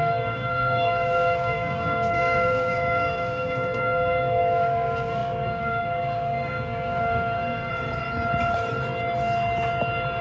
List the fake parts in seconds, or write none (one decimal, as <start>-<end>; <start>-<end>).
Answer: 0.0-7.7